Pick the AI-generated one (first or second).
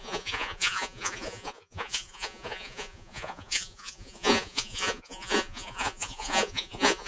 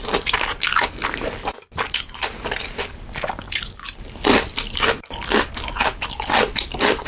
first